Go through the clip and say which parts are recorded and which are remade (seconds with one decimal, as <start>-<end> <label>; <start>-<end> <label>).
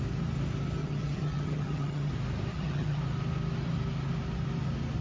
0.0-0.8 recorded; 0.8-2.1 remade; 2.1-2.5 recorded; 2.5-3.0 remade; 3.0-5.0 recorded